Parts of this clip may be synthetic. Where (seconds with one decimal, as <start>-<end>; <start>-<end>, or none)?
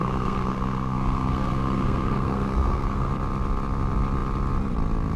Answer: 0.0-3.1